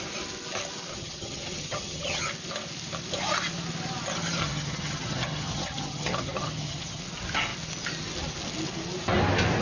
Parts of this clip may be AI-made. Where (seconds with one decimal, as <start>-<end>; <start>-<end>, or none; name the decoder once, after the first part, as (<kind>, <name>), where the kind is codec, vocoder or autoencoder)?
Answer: 0.9-2.3 (vocoder, HiFi-GAN); 4.4-7.0